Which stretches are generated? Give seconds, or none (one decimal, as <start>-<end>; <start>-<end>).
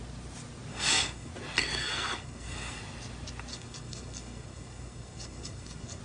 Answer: 0.7-1.3; 1.8-2.8; 3.5-6.0